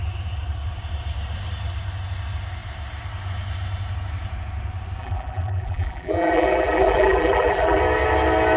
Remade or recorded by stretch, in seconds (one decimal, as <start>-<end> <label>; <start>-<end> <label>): 0.0-5.0 recorded; 5.0-7.8 remade; 7.8-8.6 recorded